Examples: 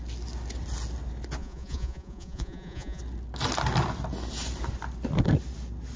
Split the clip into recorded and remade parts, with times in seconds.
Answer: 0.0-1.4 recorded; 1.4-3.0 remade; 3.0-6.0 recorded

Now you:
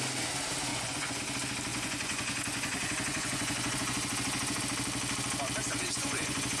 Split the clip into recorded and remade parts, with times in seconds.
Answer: 0.0-0.7 recorded; 0.7-1.2 remade; 1.2-1.7 recorded; 1.7-4.6 remade; 4.6-5.6 recorded; 5.6-6.6 remade

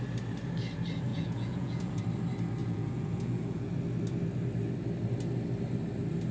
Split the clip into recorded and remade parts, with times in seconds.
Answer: 0.0-1.1 recorded; 1.1-2.0 remade; 2.0-2.6 recorded; 2.6-3.7 remade; 3.7-6.3 recorded